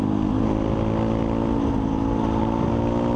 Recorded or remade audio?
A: recorded